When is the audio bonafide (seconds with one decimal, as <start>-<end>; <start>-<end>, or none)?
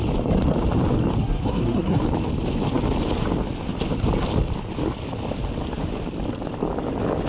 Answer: 0.0-1.2; 2.0-7.3